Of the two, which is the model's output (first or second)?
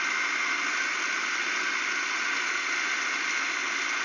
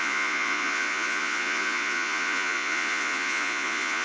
second